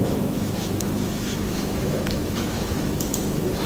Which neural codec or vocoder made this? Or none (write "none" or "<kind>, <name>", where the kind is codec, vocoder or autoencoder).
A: autoencoder, DAC-VAE